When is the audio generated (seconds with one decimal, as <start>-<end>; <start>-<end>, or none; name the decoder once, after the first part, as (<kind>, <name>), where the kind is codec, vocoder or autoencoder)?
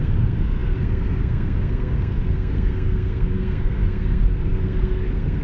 0.0-5.4 (codec, SNAC)